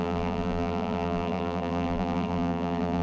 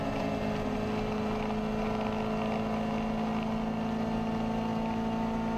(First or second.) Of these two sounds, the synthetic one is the first